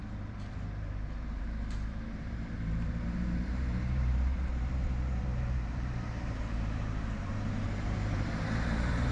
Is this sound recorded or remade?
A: remade